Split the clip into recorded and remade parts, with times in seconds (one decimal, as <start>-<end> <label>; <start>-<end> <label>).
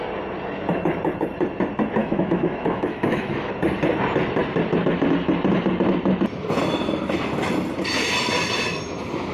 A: 0.0-2.0 recorded; 2.0-3.5 remade; 3.5-9.3 recorded